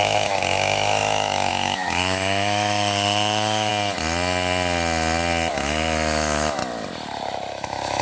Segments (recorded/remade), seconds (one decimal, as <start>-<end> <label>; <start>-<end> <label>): 0.0-3.7 remade; 3.7-5.5 recorded; 5.5-6.6 remade; 6.6-7.5 recorded; 7.5-8.0 remade